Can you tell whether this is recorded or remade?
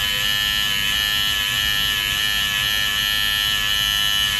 recorded